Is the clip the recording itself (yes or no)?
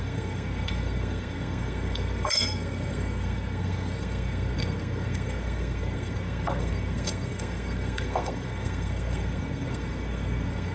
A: no